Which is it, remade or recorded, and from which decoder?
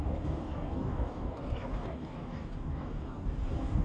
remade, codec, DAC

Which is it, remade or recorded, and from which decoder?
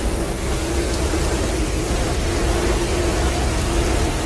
recorded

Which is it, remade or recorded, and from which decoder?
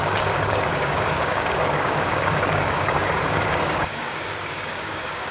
remade, codec, DAC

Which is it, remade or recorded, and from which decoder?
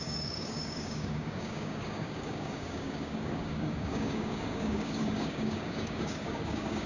remade, codec, DAC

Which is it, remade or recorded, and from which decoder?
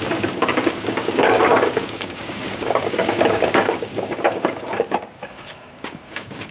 remade, codec, DAC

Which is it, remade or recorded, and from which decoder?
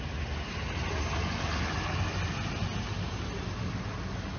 recorded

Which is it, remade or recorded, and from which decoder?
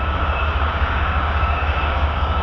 remade, codec, DAC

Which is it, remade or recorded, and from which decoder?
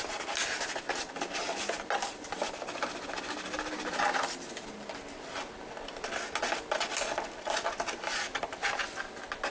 recorded